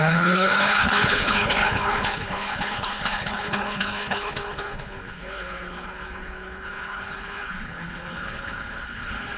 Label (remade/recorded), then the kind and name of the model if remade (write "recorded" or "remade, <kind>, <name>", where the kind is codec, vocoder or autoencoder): remade, codec, HILCodec